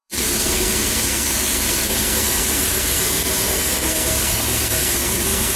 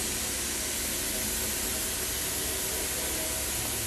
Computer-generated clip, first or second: first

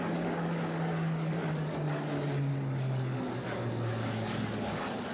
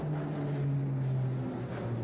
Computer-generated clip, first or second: first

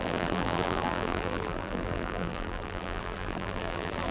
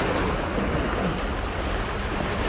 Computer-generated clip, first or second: first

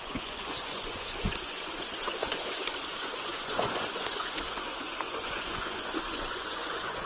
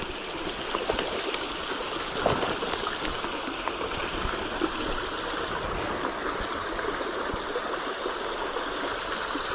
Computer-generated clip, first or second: first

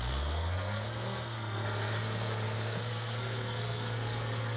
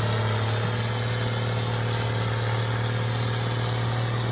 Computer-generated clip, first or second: first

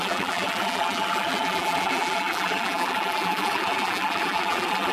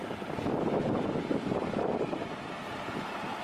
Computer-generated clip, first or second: first